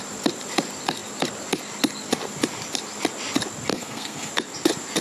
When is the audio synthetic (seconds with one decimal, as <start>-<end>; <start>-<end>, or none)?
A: 3.7-4.3